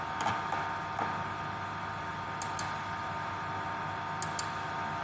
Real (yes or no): yes